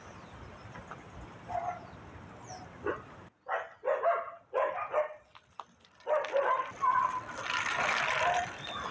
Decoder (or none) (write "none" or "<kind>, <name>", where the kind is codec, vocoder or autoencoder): none